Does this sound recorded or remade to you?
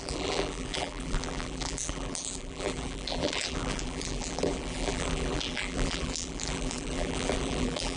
remade